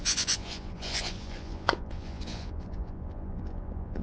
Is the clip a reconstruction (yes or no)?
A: yes